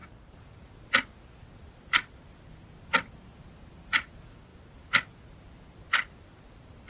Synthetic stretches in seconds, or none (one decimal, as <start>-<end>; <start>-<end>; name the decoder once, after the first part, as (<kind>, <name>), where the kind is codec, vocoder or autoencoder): none